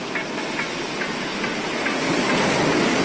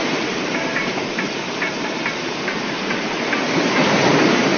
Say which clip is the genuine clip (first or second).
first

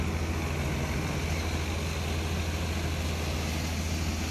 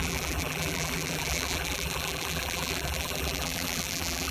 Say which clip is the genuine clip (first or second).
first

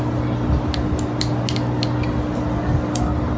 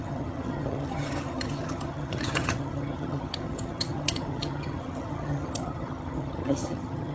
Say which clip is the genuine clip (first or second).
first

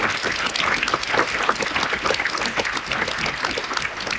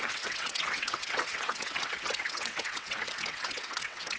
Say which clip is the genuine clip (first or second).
first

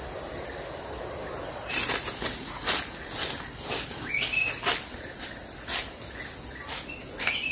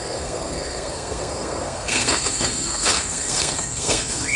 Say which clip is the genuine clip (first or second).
first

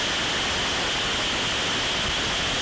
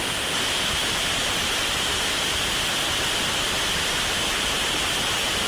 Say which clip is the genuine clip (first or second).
first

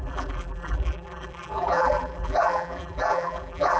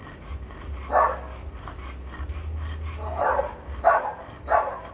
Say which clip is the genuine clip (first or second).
second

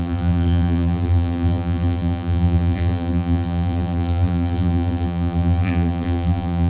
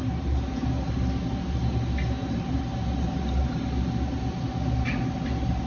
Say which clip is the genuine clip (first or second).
second